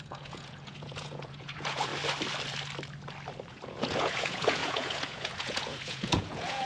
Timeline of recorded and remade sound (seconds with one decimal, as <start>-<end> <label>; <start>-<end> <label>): 0.0-1.9 remade; 1.9-3.5 recorded; 3.5-6.7 remade